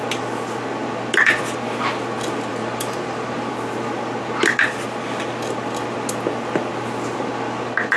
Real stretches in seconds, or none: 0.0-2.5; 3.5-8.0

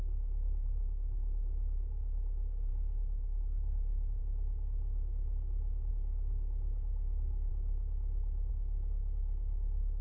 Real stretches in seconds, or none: 4.2-5.9; 7.5-8.5